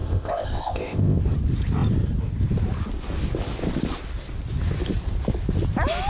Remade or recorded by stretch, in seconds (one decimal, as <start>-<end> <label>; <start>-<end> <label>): 0.0-1.2 remade; 1.2-6.1 recorded